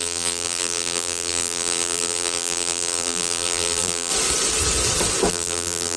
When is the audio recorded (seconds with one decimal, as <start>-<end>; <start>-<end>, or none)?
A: 4.1-5.3

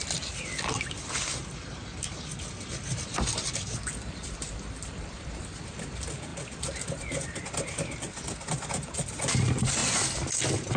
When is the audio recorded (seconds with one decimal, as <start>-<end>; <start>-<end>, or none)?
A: 0.0-10.8

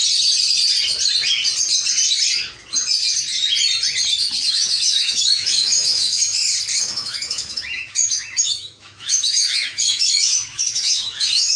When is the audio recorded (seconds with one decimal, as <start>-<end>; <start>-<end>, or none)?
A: 0.0-4.5; 6.3-6.8

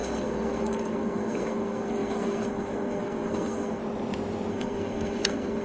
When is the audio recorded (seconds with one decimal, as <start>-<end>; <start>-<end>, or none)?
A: 3.8-4.5